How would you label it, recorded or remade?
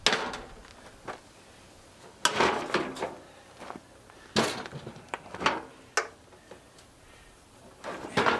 recorded